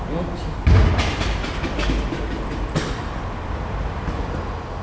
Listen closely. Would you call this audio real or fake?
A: real